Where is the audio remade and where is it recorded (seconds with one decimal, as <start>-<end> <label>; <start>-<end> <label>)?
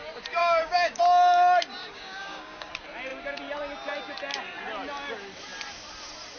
0.0-0.4 recorded; 0.4-1.0 remade; 1.0-1.8 recorded; 1.8-2.7 remade; 2.7-6.4 recorded